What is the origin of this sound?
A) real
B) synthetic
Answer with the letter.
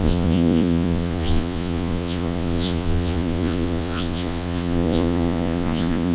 B